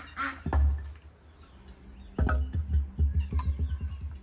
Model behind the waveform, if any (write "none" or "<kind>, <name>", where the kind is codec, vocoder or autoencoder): none